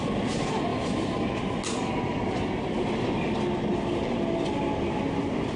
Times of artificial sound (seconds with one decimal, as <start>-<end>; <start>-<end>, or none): none